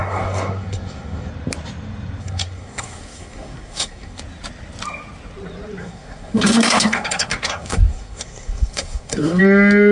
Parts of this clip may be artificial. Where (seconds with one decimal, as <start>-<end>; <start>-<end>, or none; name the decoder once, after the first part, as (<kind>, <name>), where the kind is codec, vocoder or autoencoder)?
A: 0.0-1.3 (codec, SNAC); 2.2-4.2; 5.8-9.4